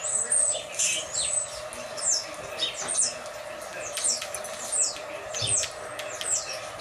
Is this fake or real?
real